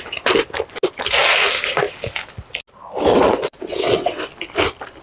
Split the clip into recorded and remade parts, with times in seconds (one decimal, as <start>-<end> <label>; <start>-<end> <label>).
0.0-3.1 recorded; 3.1-4.2 remade; 4.2-5.0 recorded